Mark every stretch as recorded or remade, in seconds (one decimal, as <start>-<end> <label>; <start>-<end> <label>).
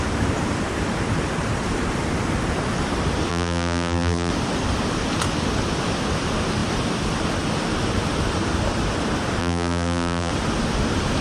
0.0-3.3 recorded; 3.3-4.3 remade; 4.3-9.4 recorded; 9.4-10.3 remade; 10.3-11.2 recorded